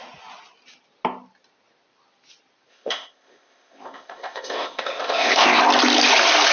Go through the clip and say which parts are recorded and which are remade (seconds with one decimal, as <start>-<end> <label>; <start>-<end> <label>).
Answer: 0.0-2.7 recorded; 2.7-5.6 remade; 5.6-6.5 recorded